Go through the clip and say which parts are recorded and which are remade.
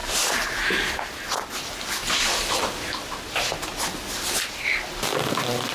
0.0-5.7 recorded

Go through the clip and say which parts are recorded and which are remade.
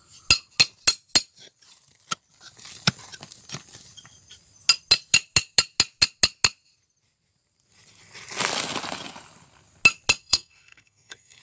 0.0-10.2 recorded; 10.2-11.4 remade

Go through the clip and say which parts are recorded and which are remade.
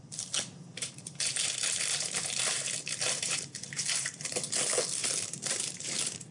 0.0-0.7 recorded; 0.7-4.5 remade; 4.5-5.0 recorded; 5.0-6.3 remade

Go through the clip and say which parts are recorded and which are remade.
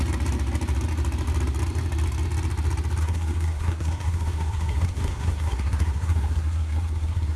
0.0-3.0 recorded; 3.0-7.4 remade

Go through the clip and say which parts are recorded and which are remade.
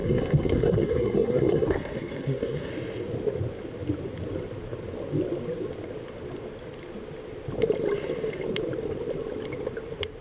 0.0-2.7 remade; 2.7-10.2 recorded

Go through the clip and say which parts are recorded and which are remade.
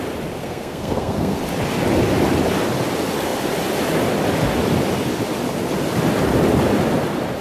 0.0-0.4 recorded; 0.4-1.4 remade; 1.4-7.4 recorded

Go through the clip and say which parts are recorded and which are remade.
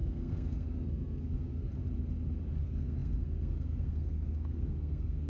0.0-1.7 remade; 1.7-2.6 recorded; 2.6-5.3 remade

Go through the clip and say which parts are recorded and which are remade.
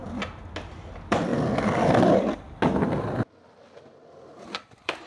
0.0-0.6 recorded; 0.6-1.3 remade; 1.3-4.4 recorded; 4.4-5.1 remade